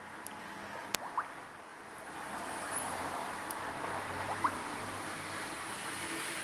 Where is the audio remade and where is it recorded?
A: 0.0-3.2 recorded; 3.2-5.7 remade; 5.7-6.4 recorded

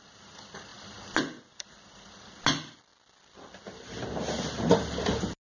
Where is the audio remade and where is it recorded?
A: 0.0-5.5 recorded

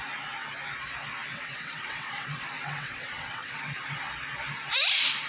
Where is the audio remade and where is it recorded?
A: 0.0-1.3 recorded; 1.3-3.6 remade; 3.6-5.3 recorded

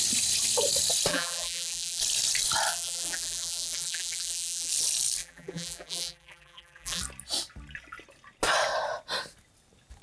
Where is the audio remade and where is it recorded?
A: 0.0-1.1 recorded; 1.1-2.0 remade; 2.0-2.7 recorded; 2.7-4.7 remade; 4.7-5.2 recorded; 5.2-7.0 remade; 7.0-10.0 recorded

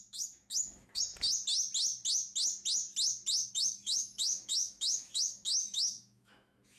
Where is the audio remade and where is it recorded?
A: 0.0-1.1 remade; 1.1-3.5 recorded; 3.5-6.8 remade